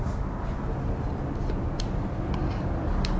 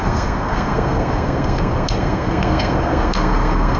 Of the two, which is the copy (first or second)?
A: second